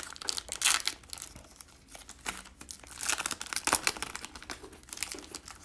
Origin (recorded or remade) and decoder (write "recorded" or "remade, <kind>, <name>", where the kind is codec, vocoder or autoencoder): recorded